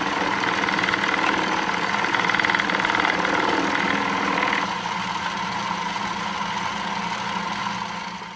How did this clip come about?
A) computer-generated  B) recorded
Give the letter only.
B